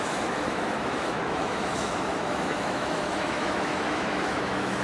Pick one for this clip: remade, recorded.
remade